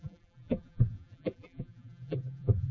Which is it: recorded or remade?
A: remade